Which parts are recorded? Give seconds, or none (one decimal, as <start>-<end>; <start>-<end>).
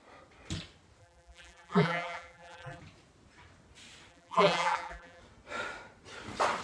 0.0-1.0; 2.8-4.1; 5.2-6.6